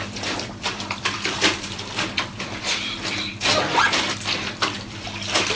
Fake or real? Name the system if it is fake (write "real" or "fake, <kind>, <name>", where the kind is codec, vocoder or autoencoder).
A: fake, vocoder, BigVGAN v2